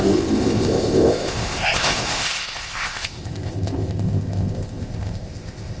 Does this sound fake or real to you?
fake